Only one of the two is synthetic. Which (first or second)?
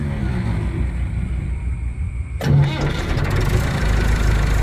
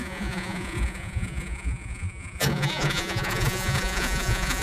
second